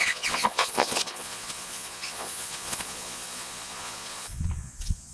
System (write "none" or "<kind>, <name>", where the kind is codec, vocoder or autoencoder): vocoder, Vocos